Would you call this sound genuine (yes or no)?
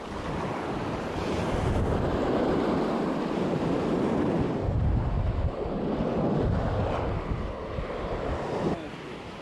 yes